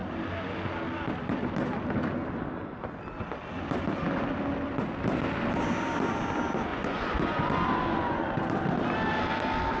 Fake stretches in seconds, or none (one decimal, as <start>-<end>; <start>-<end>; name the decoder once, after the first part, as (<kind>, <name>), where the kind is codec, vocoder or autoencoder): 6.7-8.3 (vocoder, Vocos)